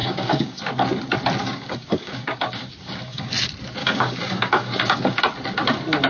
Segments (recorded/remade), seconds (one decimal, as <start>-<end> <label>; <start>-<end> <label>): 0.0-0.6 remade; 0.6-1.4 recorded; 1.4-3.3 remade; 3.3-3.8 recorded; 3.8-5.2 remade; 5.2-6.1 recorded